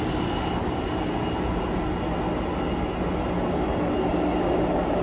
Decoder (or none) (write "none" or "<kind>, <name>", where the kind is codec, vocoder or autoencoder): none